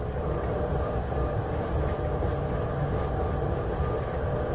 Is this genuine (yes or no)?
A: yes